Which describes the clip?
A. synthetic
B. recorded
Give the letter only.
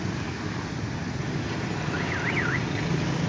B